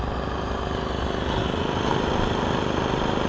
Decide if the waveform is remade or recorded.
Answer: recorded